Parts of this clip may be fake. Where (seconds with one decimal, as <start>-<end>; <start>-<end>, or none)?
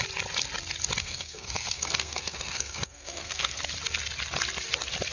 1.0-3.6